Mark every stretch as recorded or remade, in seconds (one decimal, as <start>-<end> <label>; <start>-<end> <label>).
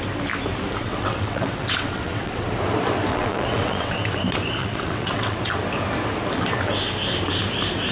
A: 0.0-0.8 recorded; 0.8-2.5 remade; 2.5-3.1 recorded; 3.1-4.0 remade; 4.0-4.6 recorded; 4.6-5.4 remade; 5.4-7.9 recorded